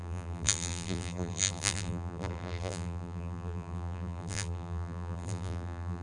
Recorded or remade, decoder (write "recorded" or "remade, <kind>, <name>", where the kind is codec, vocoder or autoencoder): remade, vocoder, BigVGAN v2